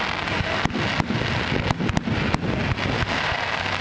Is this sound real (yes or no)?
yes